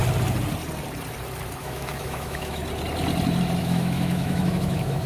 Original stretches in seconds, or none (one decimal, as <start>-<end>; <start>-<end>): 0.0-1.6; 2.6-3.6